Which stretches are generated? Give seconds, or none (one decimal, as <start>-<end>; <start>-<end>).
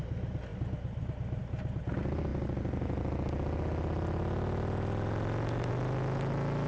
none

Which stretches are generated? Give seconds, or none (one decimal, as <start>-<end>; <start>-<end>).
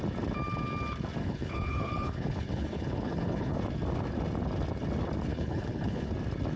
1.2-3.5; 5.3-6.1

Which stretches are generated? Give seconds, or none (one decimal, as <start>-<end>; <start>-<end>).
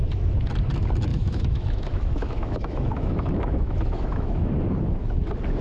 1.1-4.5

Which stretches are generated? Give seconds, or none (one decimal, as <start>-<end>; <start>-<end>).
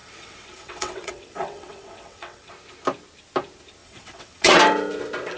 0.0-2.5; 3.8-4.6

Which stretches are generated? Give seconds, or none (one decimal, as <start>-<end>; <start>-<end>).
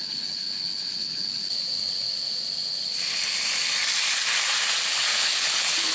0.0-1.4; 4.9-5.9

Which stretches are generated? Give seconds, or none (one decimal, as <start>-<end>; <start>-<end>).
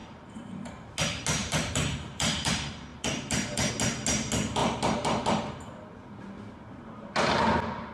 0.0-0.7; 1.4-2.5; 2.9-3.7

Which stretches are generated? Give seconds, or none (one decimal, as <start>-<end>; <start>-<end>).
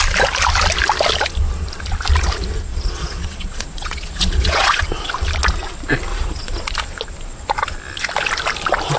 2.7-5.1; 6.1-6.6